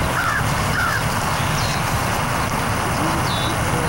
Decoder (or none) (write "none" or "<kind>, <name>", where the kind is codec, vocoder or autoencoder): none